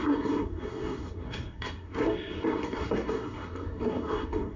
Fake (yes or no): yes